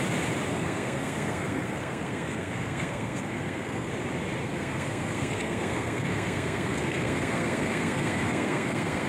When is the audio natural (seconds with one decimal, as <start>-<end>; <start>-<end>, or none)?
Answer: 0.0-0.5; 3.9-4.4